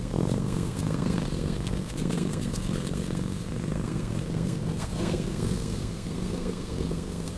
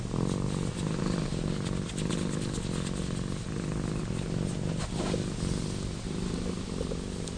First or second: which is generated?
first